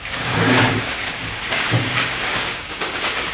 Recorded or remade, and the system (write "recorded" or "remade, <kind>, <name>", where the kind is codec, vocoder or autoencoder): remade, codec, DAC